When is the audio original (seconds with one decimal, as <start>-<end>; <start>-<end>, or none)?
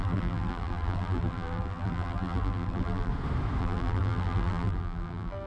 3.1-3.6